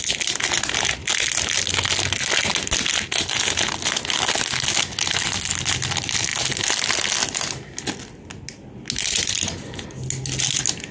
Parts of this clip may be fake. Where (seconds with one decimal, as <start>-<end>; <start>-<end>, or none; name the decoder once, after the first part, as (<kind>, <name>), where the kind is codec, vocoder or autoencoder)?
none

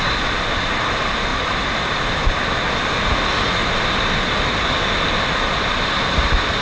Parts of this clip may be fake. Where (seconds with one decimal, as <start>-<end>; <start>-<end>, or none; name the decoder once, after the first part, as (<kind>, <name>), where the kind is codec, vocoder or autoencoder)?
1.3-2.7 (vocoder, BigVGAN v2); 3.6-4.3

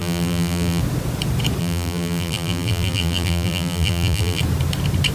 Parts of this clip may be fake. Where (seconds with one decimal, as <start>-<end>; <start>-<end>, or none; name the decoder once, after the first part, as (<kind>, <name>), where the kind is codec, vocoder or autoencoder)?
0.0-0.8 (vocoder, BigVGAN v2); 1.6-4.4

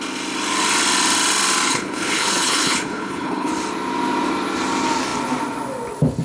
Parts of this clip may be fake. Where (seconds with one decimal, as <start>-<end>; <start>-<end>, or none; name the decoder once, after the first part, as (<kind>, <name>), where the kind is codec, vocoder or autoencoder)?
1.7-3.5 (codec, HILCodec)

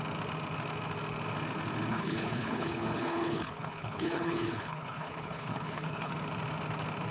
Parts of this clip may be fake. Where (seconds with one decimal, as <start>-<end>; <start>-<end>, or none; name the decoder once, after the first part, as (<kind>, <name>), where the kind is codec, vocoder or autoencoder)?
1.9-6.1 (codec, HILCodec)

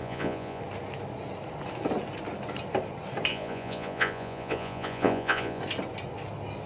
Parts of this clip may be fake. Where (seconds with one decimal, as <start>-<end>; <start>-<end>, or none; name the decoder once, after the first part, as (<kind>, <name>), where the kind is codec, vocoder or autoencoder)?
0.0-0.6 (vocoder, Vocos); 3.3-5.6

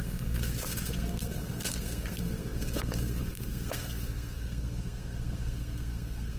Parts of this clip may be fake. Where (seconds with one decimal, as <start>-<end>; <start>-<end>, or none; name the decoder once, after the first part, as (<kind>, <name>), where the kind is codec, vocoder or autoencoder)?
0.0-6.4 (codec, SNAC)

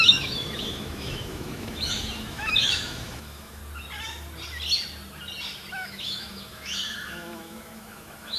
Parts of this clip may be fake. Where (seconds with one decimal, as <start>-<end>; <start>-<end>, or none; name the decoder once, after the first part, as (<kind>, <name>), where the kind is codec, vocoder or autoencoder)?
0.0-3.6 (autoencoder, DAC-VAE); 5.7-8.4